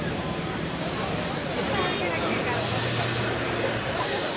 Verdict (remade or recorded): remade